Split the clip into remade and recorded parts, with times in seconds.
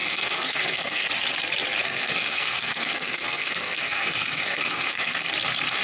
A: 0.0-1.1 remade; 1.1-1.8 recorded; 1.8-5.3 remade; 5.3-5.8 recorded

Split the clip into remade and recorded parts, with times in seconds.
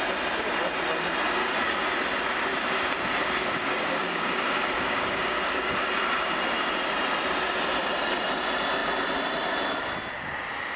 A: 0.0-1.4 recorded; 1.4-1.9 remade; 1.9-3.2 recorded; 3.2-5.9 remade; 5.9-10.8 recorded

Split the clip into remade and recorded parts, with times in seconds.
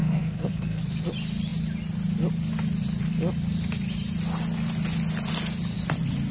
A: 0.0-0.8 remade; 0.8-6.3 recorded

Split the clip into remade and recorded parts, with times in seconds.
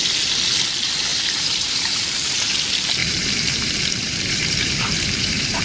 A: 0.0-1.1 recorded; 1.1-2.5 remade; 2.5-3.0 recorded; 3.0-5.6 remade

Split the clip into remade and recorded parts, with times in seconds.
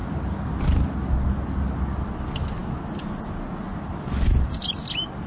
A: 0.0-5.3 recorded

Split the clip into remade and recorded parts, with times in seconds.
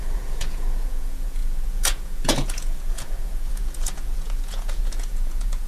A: 0.0-5.7 remade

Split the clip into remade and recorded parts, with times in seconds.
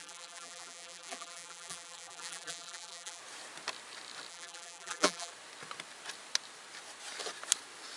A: 0.0-3.2 remade; 3.2-4.3 recorded; 4.3-5.3 remade; 5.3-8.0 recorded